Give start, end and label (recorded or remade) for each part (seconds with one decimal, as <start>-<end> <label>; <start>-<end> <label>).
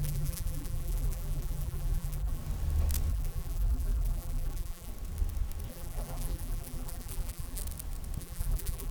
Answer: 0.0-2.4 remade; 2.4-3.1 recorded; 3.1-4.9 remade; 4.9-5.7 recorded; 5.7-7.6 remade; 7.6-8.2 recorded; 8.2-8.9 remade